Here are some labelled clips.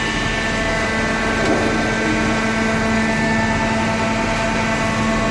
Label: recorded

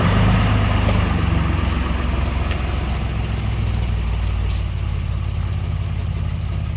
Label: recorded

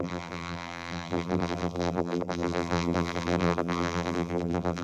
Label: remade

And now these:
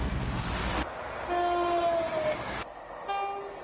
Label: recorded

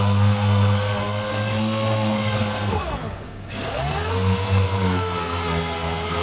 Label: remade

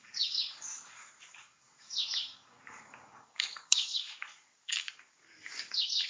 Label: remade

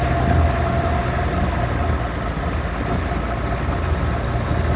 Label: recorded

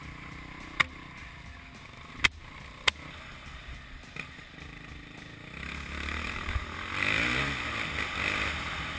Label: recorded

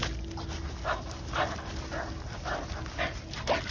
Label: recorded